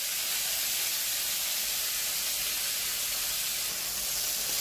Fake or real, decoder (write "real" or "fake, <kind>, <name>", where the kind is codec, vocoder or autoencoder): real